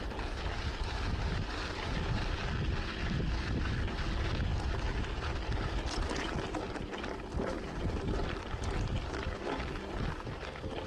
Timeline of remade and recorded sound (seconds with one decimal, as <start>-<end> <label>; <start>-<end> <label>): 0.0-10.9 recorded